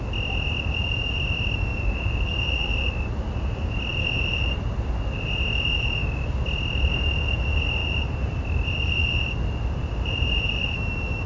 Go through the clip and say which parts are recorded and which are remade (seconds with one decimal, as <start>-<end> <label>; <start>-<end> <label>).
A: 0.0-1.7 recorded; 1.7-3.0 remade; 3.0-7.8 recorded; 7.8-8.3 remade; 8.3-9.8 recorded; 9.8-11.3 remade